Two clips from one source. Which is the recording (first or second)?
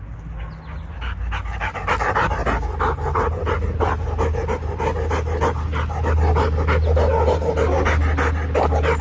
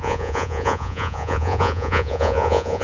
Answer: first